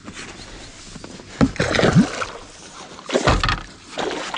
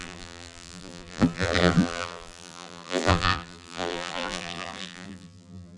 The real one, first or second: first